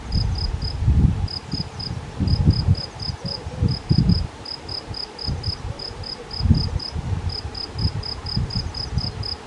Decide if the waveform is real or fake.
real